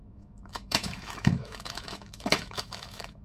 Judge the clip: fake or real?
fake